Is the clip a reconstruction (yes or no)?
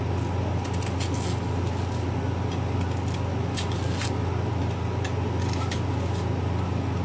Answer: no